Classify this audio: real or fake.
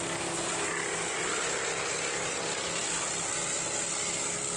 real